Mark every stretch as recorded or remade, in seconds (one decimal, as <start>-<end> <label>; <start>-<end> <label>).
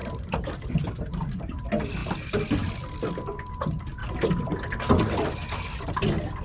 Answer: 0.0-6.4 recorded